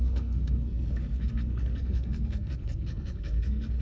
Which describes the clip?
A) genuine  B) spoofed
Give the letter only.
B